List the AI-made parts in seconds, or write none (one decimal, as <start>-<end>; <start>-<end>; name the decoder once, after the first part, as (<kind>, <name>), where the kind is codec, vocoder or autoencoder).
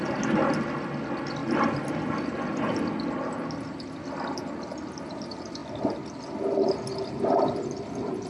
none